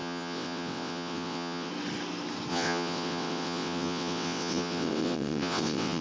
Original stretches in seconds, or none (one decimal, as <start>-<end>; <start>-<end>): 1.7-2.5